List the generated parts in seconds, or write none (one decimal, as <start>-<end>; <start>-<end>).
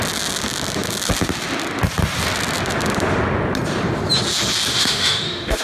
4.7-5.6